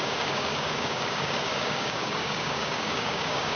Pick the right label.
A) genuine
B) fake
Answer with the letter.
B